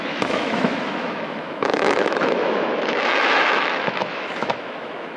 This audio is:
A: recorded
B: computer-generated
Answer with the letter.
B